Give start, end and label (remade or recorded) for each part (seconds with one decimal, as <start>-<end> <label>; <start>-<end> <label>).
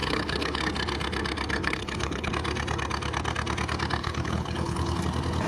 0.0-0.6 remade; 0.6-1.6 recorded; 1.6-2.3 remade; 2.3-4.0 recorded; 4.0-5.0 remade; 5.0-5.5 recorded